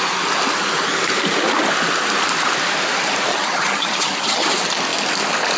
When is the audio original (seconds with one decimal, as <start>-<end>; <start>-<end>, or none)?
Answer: 0.0-3.3; 4.5-5.6